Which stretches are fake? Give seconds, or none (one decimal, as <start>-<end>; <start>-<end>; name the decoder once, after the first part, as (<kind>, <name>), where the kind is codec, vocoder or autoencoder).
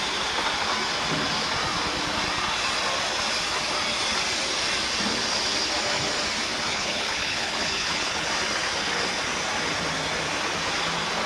6.7-8.3 (codec, HILCodec)